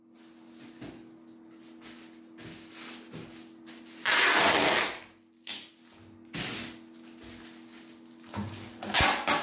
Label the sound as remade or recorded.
recorded